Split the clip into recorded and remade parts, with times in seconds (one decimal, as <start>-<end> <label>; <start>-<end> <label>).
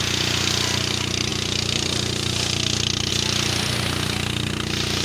0.0-5.0 recorded